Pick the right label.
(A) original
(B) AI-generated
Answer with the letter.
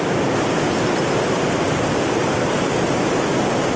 A